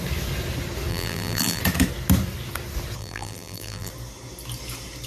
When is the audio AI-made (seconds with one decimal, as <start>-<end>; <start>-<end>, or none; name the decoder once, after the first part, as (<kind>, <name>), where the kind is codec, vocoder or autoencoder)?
0.9-1.6 (vocoder, BigVGAN v2); 3.0-3.9